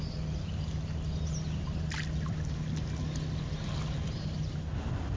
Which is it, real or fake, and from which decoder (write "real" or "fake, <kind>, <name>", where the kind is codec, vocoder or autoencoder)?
real